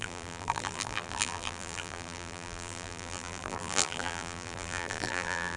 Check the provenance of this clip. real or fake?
fake